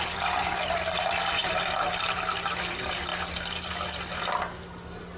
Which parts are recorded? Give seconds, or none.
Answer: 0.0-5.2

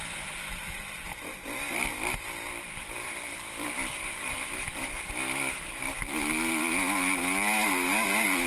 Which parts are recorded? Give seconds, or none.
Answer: 0.0-1.7; 4.7-8.5